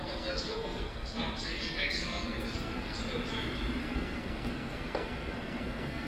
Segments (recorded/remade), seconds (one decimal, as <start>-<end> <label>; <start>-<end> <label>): 0.0-3.0 remade; 3.0-3.8 recorded; 3.8-6.1 remade